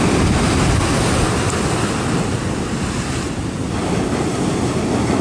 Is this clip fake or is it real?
real